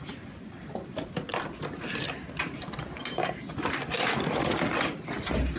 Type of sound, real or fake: real